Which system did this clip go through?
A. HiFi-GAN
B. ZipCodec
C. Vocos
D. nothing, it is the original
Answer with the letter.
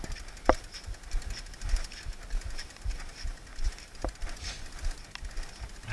D